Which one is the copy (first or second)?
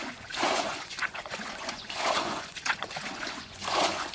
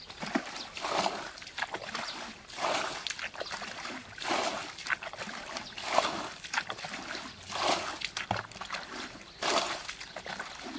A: first